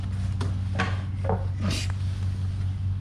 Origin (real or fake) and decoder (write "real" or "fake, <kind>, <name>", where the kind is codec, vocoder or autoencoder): real